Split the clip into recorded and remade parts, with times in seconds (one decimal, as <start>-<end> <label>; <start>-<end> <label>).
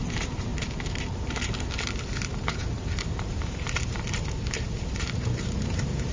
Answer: 0.0-0.5 remade; 0.5-2.0 recorded; 2.0-6.1 remade